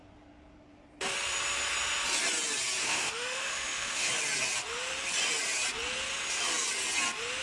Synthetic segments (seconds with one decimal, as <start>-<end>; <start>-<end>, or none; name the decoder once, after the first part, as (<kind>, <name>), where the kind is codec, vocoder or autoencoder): 2.8-4.1 (autoencoder, DAC-VAE)